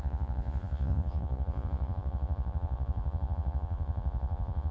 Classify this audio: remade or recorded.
remade